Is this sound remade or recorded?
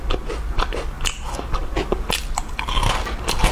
recorded